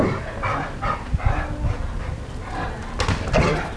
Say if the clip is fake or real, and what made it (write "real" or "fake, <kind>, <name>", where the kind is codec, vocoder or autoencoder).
real